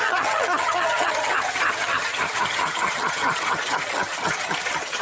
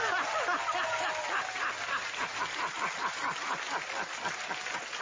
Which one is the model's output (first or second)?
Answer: first